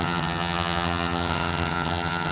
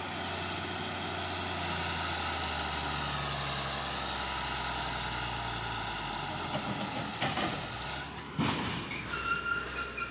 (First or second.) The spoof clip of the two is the first